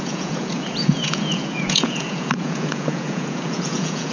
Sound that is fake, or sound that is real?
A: fake